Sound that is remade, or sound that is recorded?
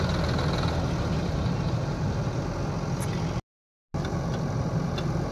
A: recorded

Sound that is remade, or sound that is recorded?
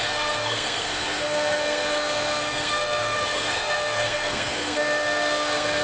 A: remade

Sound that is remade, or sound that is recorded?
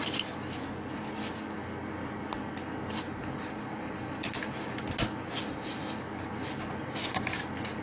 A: recorded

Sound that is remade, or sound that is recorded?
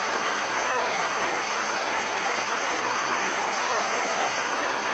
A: remade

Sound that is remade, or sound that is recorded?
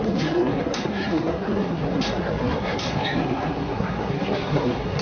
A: remade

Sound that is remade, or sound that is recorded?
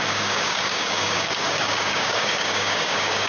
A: remade